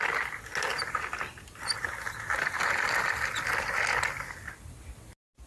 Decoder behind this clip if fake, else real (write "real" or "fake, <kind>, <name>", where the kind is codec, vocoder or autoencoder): real